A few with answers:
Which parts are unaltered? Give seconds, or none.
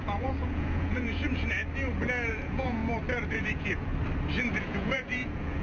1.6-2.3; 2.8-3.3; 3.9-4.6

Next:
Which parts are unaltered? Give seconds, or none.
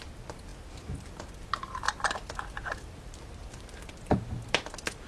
0.0-5.1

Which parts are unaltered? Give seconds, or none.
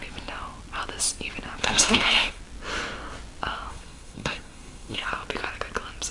0.0-1.6; 2.4-3.7; 5.1-6.1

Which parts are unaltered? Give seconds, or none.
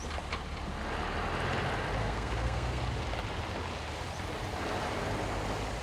0.0-2.0; 2.8-5.8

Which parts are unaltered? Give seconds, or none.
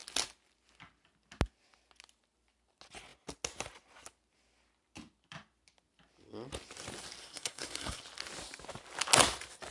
0.0-7.2; 8.0-9.7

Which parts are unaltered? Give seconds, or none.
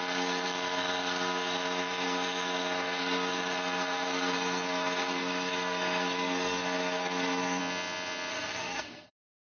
7.6-8.3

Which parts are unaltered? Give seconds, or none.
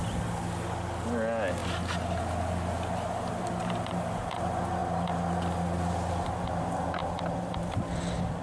0.0-8.4